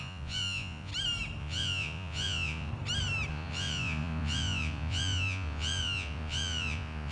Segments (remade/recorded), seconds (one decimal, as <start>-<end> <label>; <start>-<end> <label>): 0.0-0.9 remade; 0.9-1.4 recorded; 1.4-2.7 remade; 2.7-3.3 recorded; 3.3-7.1 remade

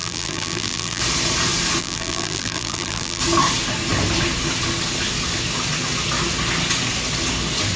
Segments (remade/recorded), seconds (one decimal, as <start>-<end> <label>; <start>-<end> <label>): 0.0-1.0 remade; 1.0-1.8 recorded; 1.8-3.2 remade; 3.2-7.8 recorded